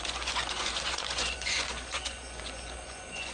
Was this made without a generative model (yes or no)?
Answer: no